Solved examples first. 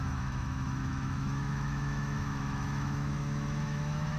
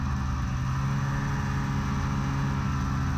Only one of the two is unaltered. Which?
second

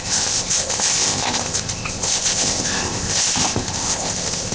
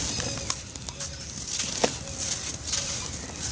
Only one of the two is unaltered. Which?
second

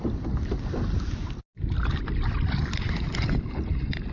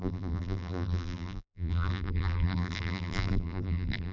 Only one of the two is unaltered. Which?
first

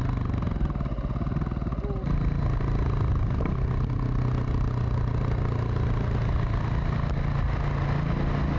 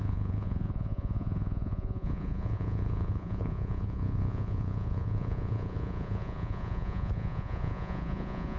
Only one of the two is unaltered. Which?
first